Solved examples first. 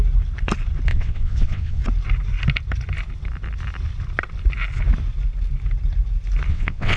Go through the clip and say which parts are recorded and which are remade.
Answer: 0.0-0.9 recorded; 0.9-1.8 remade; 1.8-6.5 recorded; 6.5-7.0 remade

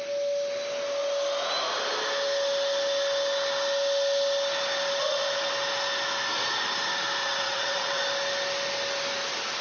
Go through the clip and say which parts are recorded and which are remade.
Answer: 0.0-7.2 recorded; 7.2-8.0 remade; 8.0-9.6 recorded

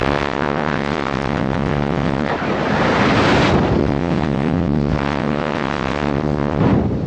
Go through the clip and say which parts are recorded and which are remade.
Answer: 0.0-2.3 remade; 2.3-3.8 recorded; 3.8-6.6 remade; 6.6-7.1 recorded

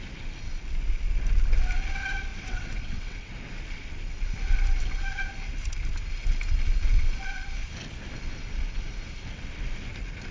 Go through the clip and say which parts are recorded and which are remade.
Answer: 0.0-2.3 recorded; 2.3-3.3 remade; 3.3-10.3 recorded